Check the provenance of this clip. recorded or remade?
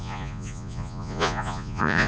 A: remade